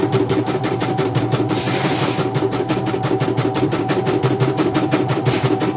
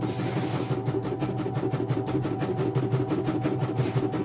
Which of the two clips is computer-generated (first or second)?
first